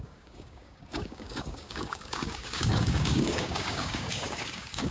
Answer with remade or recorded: remade